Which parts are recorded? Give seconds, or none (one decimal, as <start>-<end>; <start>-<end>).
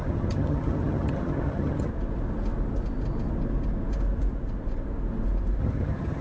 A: 1.9-5.6